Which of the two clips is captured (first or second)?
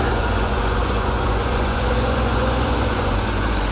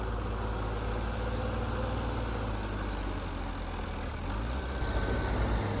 second